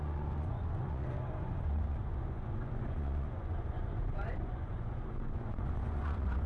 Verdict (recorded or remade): remade